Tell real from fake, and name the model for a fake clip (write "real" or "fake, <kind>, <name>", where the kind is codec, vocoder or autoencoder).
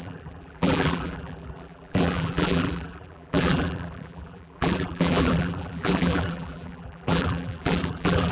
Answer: fake, vocoder, BigVGAN v2